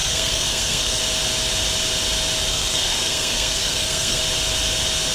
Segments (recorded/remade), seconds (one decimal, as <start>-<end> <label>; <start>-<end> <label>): 0.0-1.0 remade; 1.0-2.5 recorded; 2.5-4.2 remade; 4.2-5.1 recorded